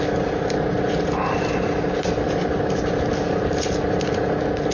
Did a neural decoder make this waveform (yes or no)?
no